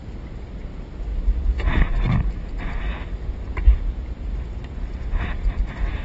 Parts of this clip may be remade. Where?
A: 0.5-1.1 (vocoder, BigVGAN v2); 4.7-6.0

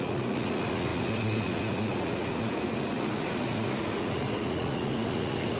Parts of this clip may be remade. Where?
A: 0.0-5.6 (vocoder, Vocos)

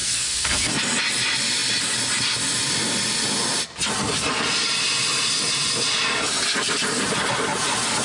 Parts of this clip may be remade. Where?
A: 0.0-0.7 (codec, SNAC)

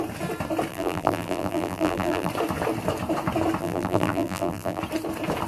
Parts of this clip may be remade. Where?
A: 0.7-2.3 (vocoder, BigVGAN v2); 3.6-4.8

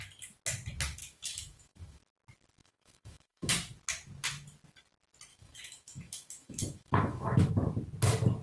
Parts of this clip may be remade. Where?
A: 1.0-2.0 (autoencoder, DAC-VAE); 2.6-3.5; 5.3-7.5

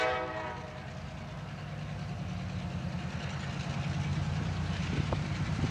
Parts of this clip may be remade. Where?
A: 4.1-5.1 (vocoder, BigVGAN v2)